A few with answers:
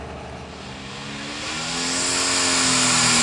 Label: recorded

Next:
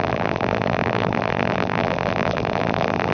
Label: remade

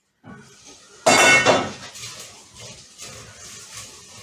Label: recorded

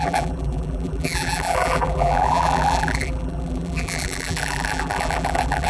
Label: remade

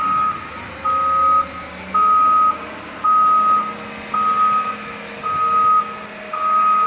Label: recorded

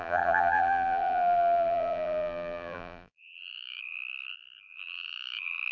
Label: remade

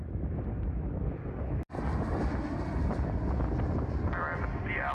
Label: recorded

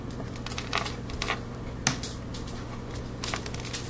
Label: recorded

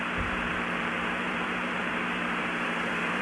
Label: remade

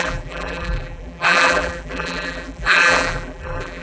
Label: remade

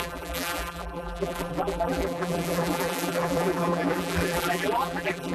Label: remade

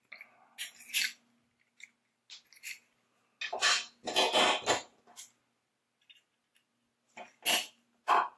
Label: recorded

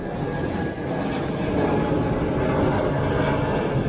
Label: recorded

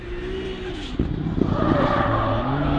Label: recorded